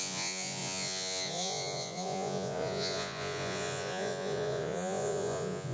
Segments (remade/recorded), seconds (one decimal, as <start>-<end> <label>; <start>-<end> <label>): 0.0-5.7 remade